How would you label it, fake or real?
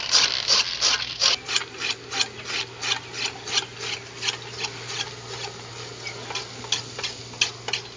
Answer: real